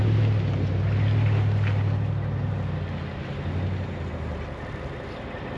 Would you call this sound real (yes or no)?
yes